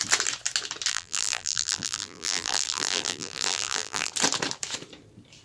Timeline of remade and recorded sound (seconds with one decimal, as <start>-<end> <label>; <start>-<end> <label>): 0.0-0.9 recorded; 0.9-4.1 remade; 4.1-5.4 recorded